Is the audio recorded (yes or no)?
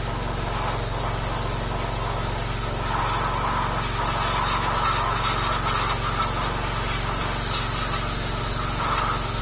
yes